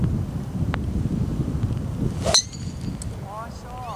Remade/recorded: recorded